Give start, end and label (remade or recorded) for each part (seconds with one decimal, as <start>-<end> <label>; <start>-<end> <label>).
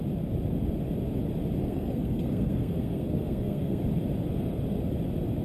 0.0-1.6 recorded; 1.6-3.8 remade; 3.8-5.4 recorded